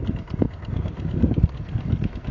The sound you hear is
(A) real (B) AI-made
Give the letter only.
B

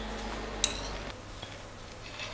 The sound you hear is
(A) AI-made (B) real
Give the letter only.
B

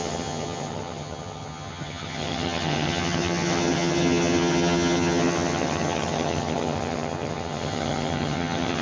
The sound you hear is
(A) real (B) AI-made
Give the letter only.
B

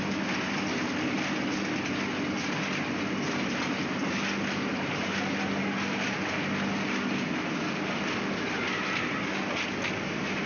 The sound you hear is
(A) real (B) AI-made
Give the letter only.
A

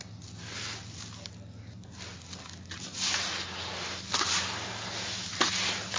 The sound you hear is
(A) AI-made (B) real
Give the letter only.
B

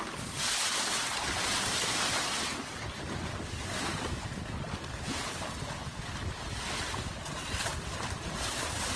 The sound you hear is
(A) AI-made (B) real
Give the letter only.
B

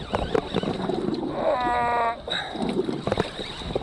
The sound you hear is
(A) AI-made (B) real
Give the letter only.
B